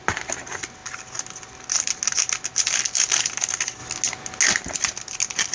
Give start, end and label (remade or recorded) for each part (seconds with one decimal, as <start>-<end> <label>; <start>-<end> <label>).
0.0-5.5 recorded